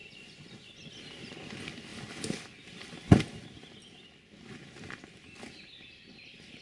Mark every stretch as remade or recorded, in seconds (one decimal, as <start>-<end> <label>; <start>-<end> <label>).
0.0-0.9 remade; 0.9-6.6 recorded